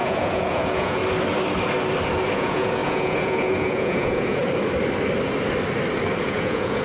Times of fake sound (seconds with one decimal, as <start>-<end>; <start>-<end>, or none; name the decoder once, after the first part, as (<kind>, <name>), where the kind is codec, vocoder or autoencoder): 0.0-1.0 (vocoder, Vocos); 2.3-4.4; 6.2-6.8